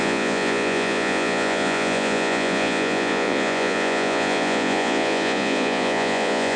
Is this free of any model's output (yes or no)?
no